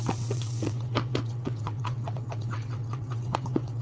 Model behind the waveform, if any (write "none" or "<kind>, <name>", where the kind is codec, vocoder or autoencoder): vocoder, WaveNeXt